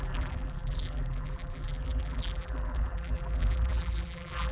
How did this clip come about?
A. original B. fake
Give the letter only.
B